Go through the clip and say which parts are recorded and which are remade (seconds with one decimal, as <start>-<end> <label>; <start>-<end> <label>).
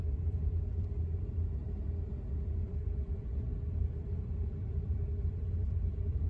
0.0-1.6 remade; 1.6-2.6 recorded; 2.6-6.3 remade